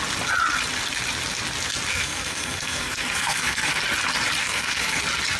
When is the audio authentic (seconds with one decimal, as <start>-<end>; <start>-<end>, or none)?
0.0-1.9; 3.8-4.4; 5.0-5.4